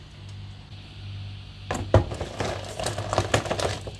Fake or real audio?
real